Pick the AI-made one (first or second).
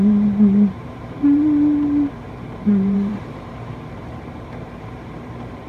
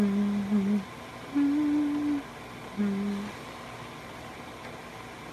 first